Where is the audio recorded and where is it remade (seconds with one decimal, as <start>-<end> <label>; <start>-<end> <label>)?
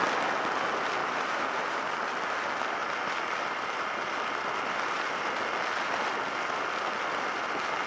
0.0-1.0 recorded; 1.0-1.8 remade; 1.8-7.9 recorded